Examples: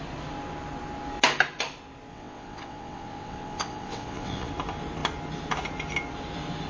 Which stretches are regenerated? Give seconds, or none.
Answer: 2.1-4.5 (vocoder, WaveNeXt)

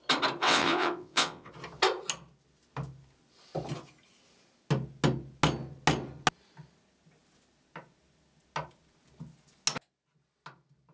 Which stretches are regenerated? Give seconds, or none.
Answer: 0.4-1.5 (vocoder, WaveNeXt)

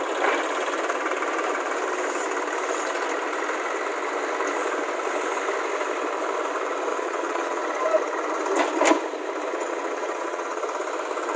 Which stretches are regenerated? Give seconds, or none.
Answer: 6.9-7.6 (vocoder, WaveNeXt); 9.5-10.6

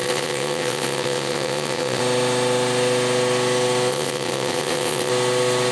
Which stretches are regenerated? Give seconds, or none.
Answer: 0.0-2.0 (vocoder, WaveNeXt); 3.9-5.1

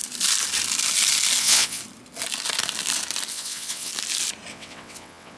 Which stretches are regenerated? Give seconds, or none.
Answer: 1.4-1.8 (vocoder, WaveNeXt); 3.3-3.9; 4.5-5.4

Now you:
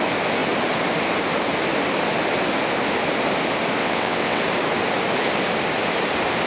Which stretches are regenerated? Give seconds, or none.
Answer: 3.8-4.4 (vocoder, WaveNeXt)

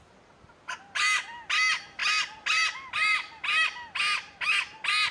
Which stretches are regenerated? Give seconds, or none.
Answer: none